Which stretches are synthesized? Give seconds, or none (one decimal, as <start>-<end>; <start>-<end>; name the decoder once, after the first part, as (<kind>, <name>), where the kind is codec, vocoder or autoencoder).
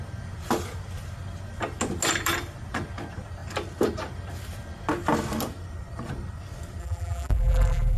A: 6.8-8.0 (vocoder, BigVGAN v2)